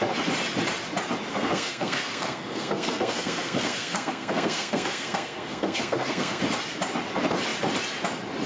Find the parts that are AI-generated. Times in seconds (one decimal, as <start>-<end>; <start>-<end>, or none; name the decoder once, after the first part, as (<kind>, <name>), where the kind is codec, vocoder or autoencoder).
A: 1.3-6.4 (codec, SNAC)